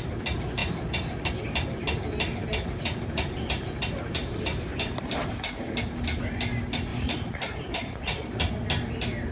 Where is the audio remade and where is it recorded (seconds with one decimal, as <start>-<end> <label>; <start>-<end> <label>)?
0.0-0.6 recorded; 0.6-1.3 remade; 1.3-2.4 recorded; 2.4-5.8 remade; 5.8-6.9 recorded; 6.9-8.5 remade; 8.5-9.3 recorded

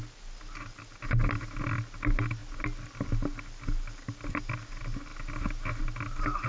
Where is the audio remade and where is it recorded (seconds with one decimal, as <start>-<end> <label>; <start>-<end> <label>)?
0.0-6.5 recorded

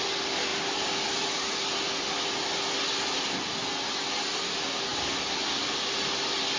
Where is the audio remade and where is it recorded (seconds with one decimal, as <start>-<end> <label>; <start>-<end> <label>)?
0.0-6.6 recorded

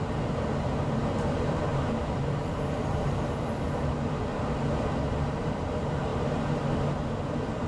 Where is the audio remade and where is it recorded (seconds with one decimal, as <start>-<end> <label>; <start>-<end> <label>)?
0.0-4.3 remade; 4.3-5.2 recorded; 5.2-7.7 remade

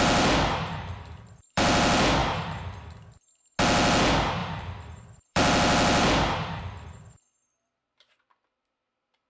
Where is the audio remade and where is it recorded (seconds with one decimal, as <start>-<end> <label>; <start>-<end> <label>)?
0.0-2.2 remade; 2.2-4.0 recorded; 4.0-9.3 remade

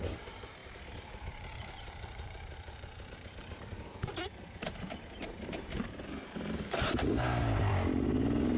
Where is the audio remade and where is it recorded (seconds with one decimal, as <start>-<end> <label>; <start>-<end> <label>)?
0.0-3.4 remade; 3.4-5.2 recorded; 5.2-7.7 remade; 7.7-8.6 recorded